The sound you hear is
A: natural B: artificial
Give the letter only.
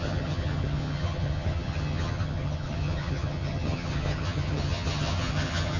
B